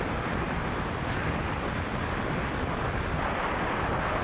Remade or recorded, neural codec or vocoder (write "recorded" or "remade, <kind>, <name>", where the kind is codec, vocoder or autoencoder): recorded